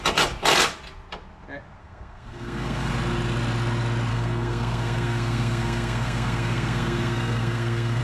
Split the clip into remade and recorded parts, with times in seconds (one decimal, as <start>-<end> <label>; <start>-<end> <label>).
0.0-1.8 recorded; 1.8-2.9 remade; 2.9-4.1 recorded; 4.1-8.0 remade